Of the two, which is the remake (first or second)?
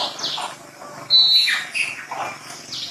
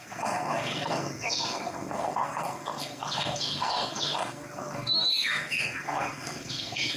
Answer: second